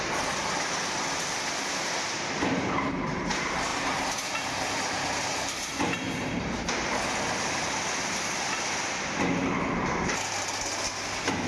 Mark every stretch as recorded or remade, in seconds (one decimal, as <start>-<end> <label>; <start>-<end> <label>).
0.0-11.5 recorded